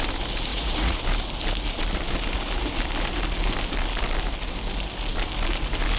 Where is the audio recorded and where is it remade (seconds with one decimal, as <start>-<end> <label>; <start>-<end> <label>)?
0.0-0.5 recorded; 0.5-1.0 remade; 1.0-6.0 recorded